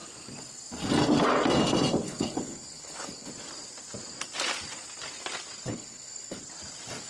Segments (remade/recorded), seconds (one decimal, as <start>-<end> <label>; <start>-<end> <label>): 0.0-2.0 recorded; 2.0-3.3 remade; 3.3-5.7 recorded; 5.7-6.4 remade; 6.4-7.1 recorded